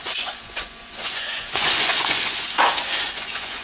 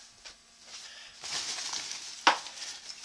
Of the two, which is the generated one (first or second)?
first